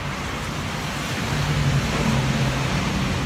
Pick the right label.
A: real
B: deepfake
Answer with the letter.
A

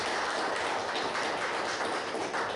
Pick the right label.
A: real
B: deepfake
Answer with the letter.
A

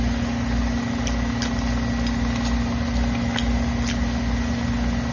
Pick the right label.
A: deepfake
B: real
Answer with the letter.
B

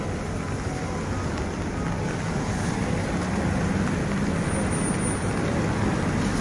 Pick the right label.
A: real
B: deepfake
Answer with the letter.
A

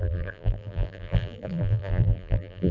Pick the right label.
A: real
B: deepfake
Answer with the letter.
B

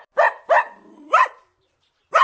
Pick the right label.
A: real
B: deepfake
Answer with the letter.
B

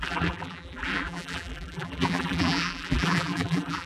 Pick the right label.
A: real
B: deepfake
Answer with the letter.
B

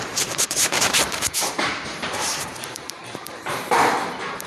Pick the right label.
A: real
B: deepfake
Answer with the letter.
B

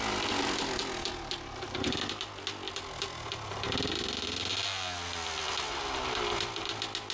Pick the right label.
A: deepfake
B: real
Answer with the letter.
B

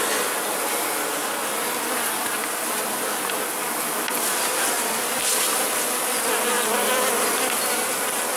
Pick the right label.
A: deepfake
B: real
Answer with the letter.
B